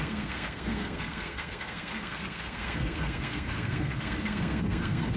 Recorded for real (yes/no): no